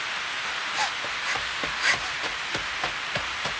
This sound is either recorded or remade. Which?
recorded